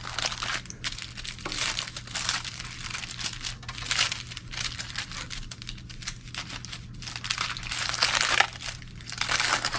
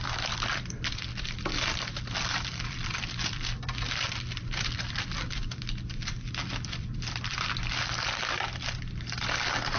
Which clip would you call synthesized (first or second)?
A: second